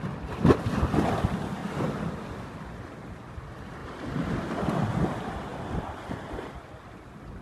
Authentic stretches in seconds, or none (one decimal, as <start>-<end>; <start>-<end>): 0.0-1.6; 2.1-3.8; 4.4-5.5; 6.7-7.4